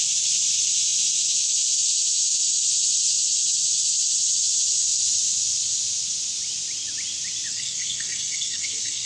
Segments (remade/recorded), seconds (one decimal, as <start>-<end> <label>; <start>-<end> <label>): 0.0-7.5 recorded; 7.5-9.1 remade